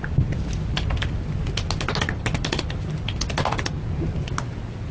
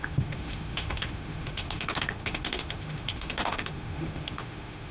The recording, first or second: first